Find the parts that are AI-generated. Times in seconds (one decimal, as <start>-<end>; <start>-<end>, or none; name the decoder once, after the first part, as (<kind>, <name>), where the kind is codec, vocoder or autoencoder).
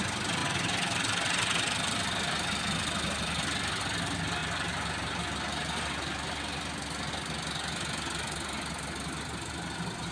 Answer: none